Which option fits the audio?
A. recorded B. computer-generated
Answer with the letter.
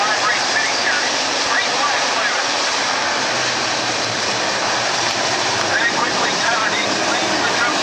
B